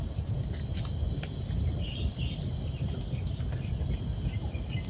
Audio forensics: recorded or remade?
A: recorded